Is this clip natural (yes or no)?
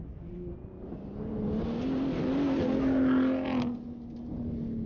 yes